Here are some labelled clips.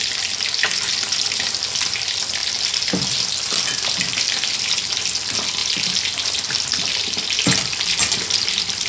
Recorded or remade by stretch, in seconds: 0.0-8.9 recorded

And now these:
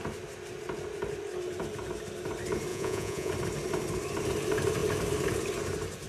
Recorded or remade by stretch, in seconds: 0.0-2.7 recorded; 2.7-3.3 remade; 3.3-6.1 recorded

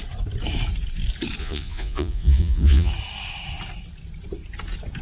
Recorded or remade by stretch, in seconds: 0.0-1.4 recorded; 1.4-2.9 remade; 2.9-5.0 recorded

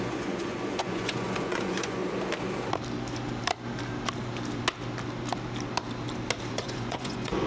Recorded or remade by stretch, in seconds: 0.0-2.0 remade; 2.0-6.5 recorded; 6.5-7.5 remade

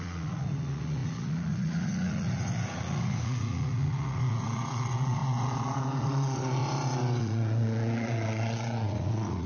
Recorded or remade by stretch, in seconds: 0.0-6.6 remade; 6.6-7.2 recorded; 7.2-9.5 remade

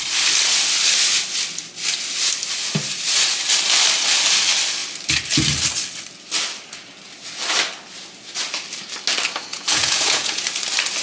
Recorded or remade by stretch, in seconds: 0.0-9.5 recorded; 9.5-10.4 remade; 10.4-11.0 recorded